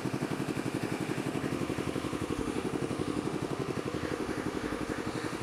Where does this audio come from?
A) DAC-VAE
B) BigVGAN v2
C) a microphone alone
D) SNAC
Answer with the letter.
A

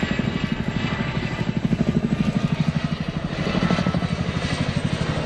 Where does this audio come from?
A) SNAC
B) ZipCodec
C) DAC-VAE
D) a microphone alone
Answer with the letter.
D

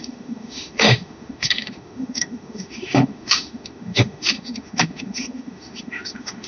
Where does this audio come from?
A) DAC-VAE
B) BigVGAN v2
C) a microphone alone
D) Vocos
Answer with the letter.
A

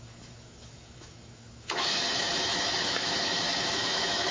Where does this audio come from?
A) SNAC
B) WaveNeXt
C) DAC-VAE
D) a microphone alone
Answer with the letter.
C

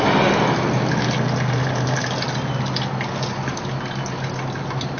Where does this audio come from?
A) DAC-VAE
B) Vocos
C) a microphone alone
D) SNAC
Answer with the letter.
C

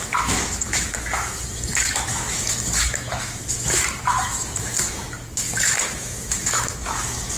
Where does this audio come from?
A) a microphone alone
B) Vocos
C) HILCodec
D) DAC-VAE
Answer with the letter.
D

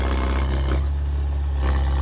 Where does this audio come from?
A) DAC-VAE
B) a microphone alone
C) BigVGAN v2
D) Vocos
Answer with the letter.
B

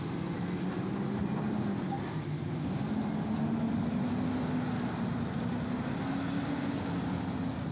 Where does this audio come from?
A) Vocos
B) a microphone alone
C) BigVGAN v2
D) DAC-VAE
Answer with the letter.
B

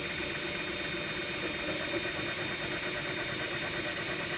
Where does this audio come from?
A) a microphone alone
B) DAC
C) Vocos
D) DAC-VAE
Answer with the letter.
A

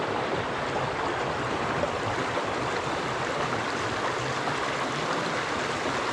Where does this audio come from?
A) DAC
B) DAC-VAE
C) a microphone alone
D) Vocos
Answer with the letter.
C